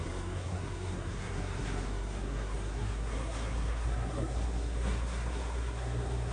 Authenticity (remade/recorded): remade